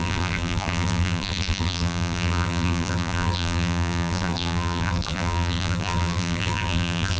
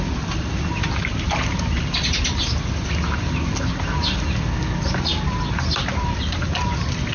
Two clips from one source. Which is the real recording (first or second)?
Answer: second